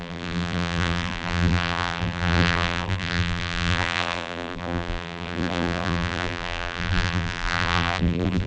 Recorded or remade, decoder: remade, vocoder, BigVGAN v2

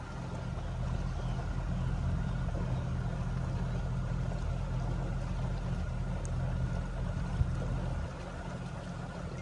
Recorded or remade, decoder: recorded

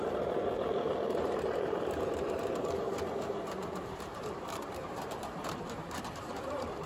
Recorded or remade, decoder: remade, vocoder, BigVGAN v2